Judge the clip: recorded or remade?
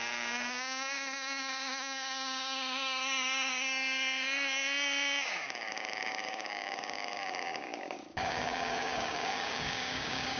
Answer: remade